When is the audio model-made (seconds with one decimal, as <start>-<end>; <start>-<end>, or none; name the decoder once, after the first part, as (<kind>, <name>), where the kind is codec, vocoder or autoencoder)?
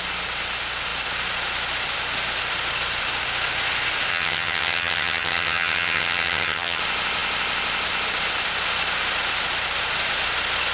4.1-6.8 (vocoder, HiFi-GAN)